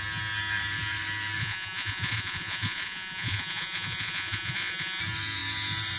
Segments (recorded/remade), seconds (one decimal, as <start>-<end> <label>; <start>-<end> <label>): 0.0-1.4 recorded; 1.4-5.0 remade; 5.0-6.0 recorded